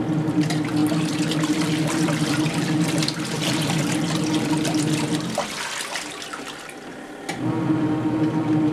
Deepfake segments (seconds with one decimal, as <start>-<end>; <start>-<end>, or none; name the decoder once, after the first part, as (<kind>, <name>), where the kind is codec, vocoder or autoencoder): 0.8-3.9 (vocoder, BigVGAN v2)